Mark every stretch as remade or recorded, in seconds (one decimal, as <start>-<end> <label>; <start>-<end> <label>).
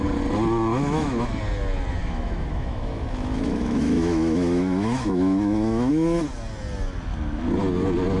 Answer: 0.0-0.7 recorded; 0.7-1.4 remade; 1.4-2.0 recorded; 2.0-5.9 remade; 5.9-8.2 recorded